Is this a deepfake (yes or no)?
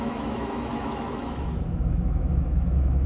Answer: yes